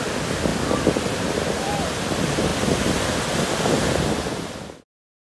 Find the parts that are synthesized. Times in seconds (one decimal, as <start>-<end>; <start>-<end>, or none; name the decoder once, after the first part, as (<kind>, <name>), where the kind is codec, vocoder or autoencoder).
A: none